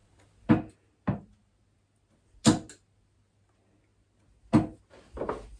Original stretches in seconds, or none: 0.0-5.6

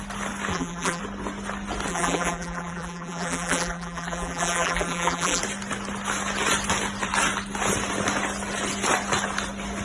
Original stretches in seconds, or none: 0.0-0.5; 1.0-1.9; 5.4-9.8

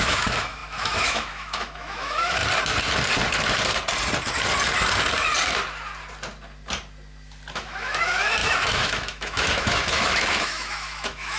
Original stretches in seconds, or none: 2.4-7.5

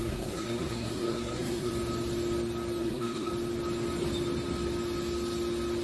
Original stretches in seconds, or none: 1.7-2.8; 3.3-5.8

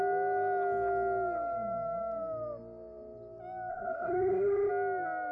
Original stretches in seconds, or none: 0.0-3.7; 4.7-5.3

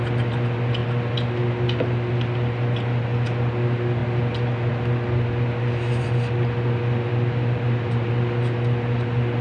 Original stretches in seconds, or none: 0.0-7.1; 8.1-9.4

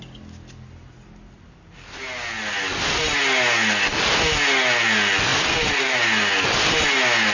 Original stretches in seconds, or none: 0.0-5.3; 6.0-7.3